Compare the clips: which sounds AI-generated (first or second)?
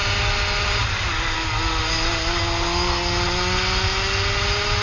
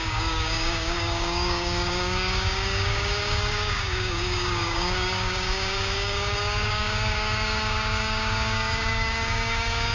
second